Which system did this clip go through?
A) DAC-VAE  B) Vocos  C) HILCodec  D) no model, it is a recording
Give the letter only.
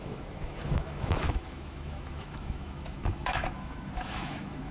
A